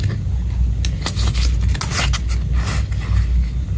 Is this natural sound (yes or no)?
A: yes